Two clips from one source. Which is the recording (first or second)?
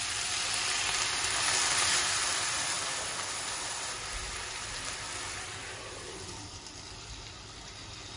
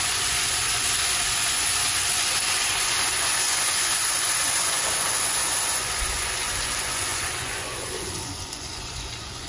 first